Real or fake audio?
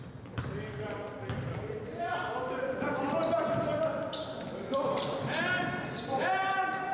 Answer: real